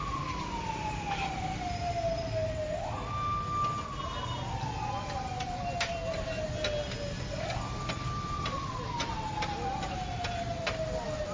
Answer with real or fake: real